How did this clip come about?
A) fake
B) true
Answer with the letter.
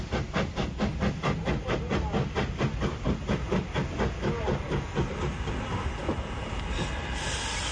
B